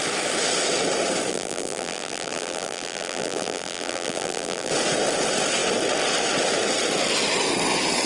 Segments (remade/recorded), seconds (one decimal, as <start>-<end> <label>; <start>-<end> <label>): 0.0-1.3 recorded; 1.3-4.7 remade; 4.7-8.1 recorded